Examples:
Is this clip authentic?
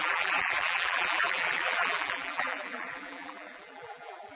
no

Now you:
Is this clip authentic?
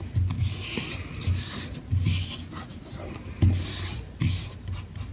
yes